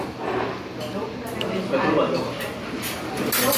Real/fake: real